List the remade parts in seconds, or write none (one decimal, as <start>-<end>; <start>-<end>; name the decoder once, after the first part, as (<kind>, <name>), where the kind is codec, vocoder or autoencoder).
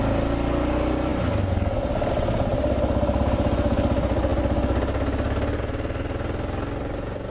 none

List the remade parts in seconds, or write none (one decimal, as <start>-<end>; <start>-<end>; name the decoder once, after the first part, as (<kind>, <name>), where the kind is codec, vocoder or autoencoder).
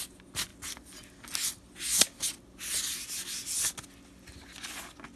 none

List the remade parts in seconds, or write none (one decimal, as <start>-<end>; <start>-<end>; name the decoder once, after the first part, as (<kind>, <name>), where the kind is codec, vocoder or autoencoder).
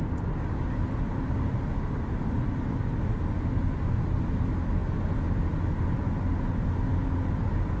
none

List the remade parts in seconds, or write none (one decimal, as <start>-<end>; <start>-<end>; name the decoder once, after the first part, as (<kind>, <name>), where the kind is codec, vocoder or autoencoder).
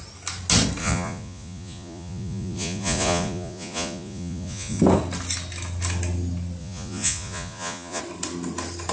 0.8-4.8 (vocoder, Vocos); 6.6-8.0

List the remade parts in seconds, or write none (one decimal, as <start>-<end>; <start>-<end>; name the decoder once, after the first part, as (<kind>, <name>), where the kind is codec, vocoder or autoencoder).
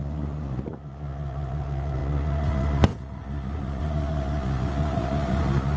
0.0-5.8 (vocoder, Vocos)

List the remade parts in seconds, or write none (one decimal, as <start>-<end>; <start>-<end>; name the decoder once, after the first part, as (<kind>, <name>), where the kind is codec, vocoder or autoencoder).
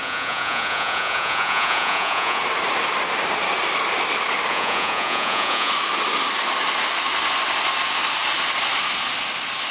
0.0-2.4 (vocoder, Vocos); 4.5-5.7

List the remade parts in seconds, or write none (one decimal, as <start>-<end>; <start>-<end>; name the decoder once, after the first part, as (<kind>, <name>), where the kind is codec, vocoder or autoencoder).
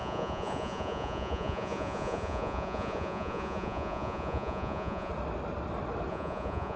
0.0-5.1 (vocoder, Vocos); 6.1-6.8